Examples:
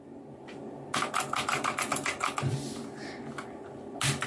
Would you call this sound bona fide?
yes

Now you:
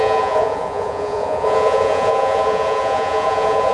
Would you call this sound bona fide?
no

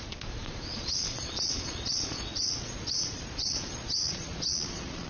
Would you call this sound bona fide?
no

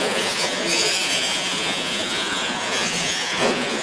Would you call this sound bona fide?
no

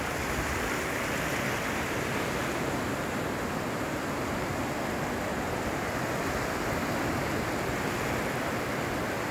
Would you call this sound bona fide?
yes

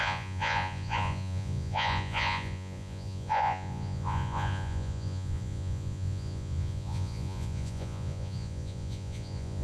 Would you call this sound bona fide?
no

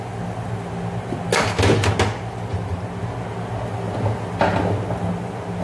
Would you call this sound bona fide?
yes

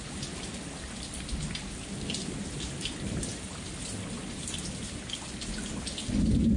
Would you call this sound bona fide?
yes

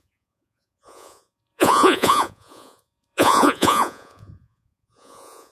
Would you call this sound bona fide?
no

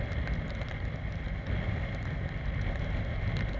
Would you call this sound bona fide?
yes